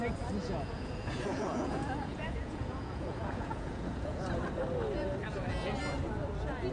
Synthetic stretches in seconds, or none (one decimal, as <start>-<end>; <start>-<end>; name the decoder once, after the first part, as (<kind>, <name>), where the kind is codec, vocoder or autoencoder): 0.4-4.4 (vocoder, Vocos)